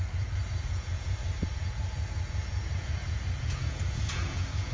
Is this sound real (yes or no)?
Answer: no